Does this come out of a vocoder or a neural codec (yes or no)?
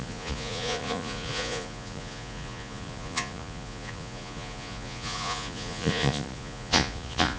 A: yes